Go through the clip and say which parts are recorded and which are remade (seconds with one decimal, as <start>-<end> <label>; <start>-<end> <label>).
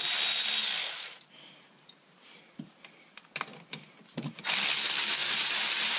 0.0-5.2 recorded; 5.2-6.0 remade